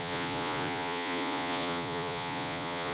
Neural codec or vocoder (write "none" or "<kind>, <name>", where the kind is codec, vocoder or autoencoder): vocoder, Vocos